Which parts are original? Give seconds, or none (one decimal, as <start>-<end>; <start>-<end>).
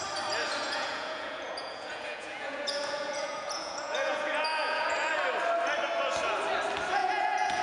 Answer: 0.0-0.6; 5.1-7.0